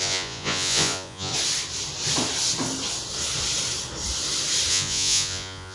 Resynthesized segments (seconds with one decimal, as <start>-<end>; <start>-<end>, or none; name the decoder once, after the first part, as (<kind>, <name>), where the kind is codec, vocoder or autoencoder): 0.0-1.3 (vocoder, Vocos); 4.7-5.7